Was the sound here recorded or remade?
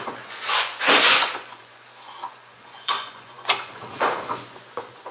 remade